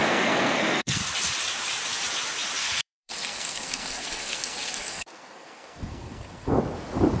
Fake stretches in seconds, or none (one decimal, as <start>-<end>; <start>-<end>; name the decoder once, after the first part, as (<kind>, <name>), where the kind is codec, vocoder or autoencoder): 0.0-1.0 (codec, SNAC); 2.6-6.6